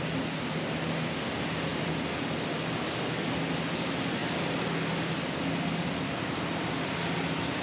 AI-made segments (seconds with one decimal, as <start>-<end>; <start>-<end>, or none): 1.7-2.3; 4.2-4.7